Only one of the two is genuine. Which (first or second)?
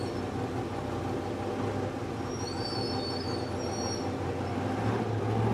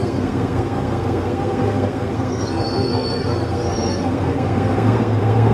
first